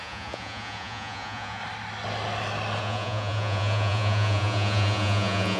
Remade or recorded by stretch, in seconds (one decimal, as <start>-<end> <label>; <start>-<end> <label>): 0.0-1.6 remade; 1.6-2.8 recorded; 2.8-5.6 remade